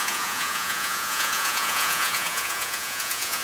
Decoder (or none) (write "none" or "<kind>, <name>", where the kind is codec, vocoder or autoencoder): vocoder, Vocos